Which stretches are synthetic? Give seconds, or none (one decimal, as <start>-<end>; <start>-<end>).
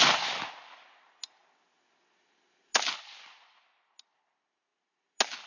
none